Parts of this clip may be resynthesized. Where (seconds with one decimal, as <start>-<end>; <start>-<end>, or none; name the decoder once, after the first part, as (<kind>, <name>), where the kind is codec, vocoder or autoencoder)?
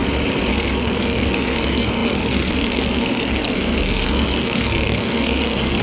0.5-5.8 (codec, SNAC)